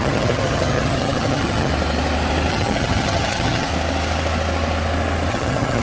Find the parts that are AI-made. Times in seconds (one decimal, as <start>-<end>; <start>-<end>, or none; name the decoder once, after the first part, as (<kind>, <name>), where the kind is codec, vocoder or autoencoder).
0.0-1.7 (vocoder, HiFi-GAN); 2.5-3.7; 5.3-5.8

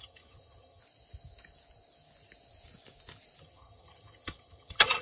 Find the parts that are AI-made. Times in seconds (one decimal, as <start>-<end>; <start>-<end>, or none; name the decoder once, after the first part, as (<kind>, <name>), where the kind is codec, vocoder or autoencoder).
0.0-0.8 (vocoder, HiFi-GAN); 3.4-5.0

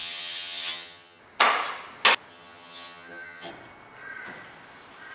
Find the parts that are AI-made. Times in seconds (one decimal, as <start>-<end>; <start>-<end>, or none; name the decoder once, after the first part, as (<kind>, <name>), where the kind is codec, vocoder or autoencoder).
0.0-1.2 (vocoder, HiFi-GAN); 2.3-3.5